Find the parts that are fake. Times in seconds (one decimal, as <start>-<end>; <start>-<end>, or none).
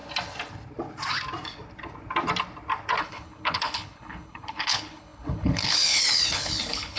3.0-7.0